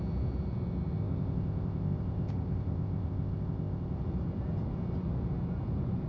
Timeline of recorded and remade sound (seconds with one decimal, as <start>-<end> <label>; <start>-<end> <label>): 0.0-1.0 recorded; 1.0-4.0 remade; 4.0-6.1 recorded